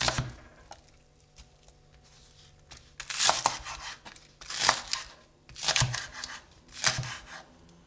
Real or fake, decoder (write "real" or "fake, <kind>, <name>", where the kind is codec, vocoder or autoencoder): real